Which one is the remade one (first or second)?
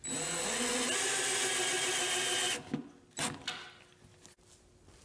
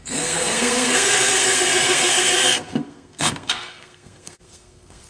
second